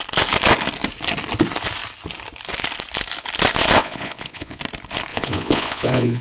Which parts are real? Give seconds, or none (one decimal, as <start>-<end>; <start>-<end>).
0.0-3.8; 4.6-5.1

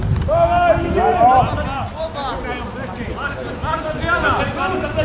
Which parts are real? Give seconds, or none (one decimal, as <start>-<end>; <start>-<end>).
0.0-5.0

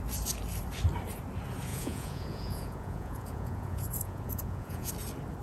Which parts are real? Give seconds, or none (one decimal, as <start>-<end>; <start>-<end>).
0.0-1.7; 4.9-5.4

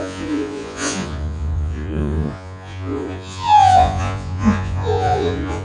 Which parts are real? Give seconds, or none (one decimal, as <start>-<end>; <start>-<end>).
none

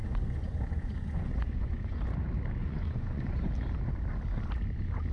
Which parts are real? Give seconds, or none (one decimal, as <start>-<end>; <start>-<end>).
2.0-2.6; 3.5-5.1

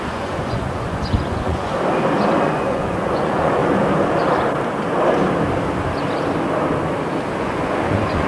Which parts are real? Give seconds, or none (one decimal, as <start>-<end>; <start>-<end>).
1.7-2.4; 3.6-7.4

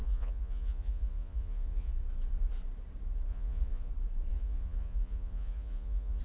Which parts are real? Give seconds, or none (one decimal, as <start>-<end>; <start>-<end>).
1.9-3.3; 3.9-4.3

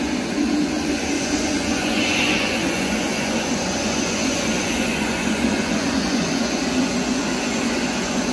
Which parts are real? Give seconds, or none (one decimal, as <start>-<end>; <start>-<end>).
none